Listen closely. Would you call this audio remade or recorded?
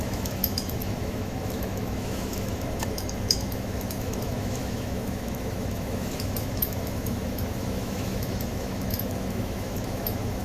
remade